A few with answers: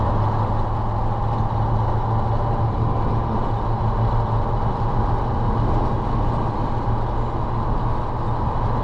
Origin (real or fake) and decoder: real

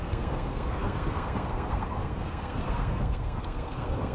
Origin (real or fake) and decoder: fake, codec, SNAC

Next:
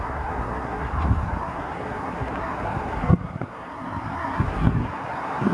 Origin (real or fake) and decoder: fake, codec, SNAC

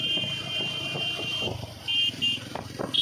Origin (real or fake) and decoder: real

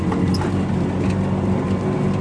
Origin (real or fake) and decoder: real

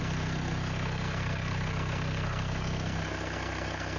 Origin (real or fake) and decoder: fake, codec, SNAC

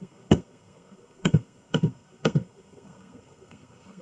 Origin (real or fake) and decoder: fake, codec, SNAC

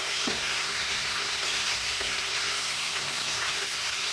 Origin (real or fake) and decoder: fake, codec, SNAC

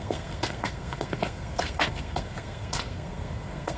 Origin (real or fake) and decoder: fake, codec, SNAC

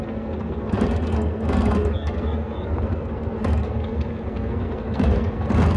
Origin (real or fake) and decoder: fake, codec, SNAC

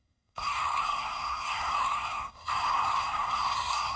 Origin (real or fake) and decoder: fake, codec, SNAC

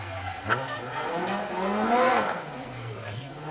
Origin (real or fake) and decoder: fake, codec, SNAC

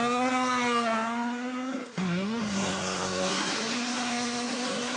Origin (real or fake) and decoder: fake, codec, SNAC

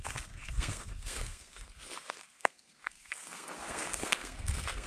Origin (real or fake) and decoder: fake, codec, SNAC